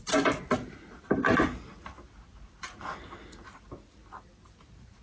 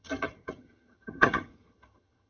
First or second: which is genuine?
first